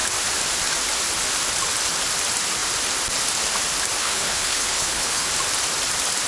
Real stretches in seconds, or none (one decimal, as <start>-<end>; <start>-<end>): 0.0-4.0; 5.3-6.3